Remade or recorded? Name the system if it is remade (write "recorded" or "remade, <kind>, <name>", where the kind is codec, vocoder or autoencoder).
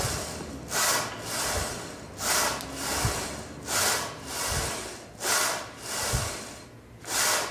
recorded